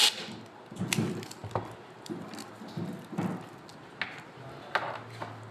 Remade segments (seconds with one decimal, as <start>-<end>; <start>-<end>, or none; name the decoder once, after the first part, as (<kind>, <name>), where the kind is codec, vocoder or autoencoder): none